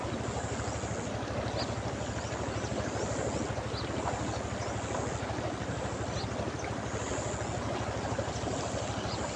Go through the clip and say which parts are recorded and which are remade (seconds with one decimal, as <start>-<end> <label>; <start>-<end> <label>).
0.0-9.4 recorded